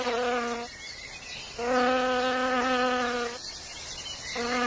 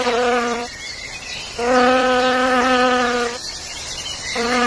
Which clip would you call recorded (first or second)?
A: first